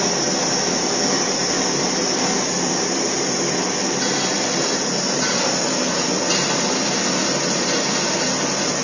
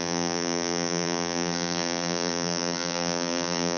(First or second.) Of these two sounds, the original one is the first